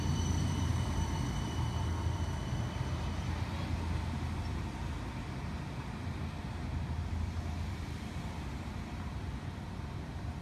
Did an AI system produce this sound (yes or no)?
yes